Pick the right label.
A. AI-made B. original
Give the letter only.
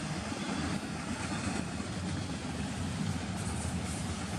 B